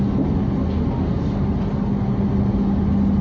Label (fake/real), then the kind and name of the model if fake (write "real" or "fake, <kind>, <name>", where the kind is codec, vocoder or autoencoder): real